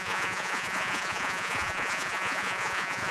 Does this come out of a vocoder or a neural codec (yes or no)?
yes